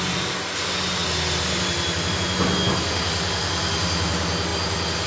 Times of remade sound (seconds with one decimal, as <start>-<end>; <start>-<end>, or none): none